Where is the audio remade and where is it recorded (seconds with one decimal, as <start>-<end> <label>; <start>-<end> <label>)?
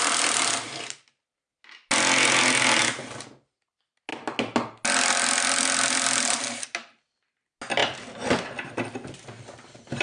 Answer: 0.0-10.0 recorded